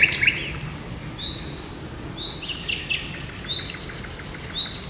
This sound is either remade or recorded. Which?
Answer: recorded